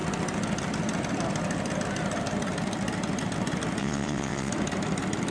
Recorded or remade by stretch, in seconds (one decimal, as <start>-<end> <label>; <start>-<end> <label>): 0.0-3.8 recorded; 3.8-4.5 remade; 4.5-5.3 recorded